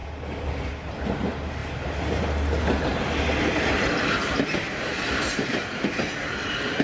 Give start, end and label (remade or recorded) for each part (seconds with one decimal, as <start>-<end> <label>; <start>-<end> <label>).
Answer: 0.0-6.8 recorded